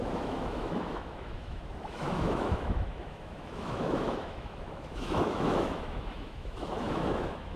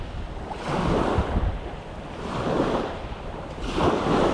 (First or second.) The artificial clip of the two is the first